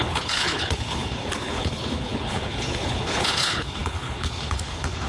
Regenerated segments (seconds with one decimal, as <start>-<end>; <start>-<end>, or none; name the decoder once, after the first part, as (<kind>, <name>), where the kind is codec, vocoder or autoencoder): 0.0-5.1 (codec, HILCodec)